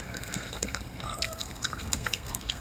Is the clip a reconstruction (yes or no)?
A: yes